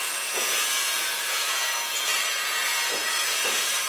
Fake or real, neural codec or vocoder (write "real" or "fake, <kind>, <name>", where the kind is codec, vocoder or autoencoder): fake, vocoder, Vocos